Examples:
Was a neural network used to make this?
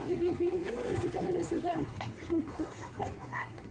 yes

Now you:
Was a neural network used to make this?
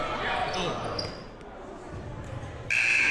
no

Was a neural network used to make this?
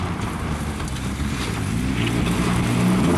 no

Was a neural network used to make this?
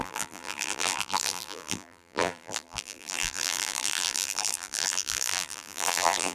yes